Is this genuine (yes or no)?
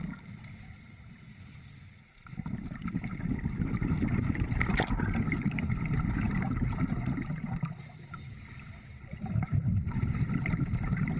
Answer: yes